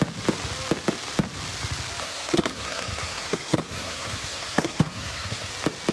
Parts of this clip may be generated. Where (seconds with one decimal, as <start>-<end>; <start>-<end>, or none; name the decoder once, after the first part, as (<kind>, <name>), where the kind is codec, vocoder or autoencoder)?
2.0-5.5 (codec, SNAC)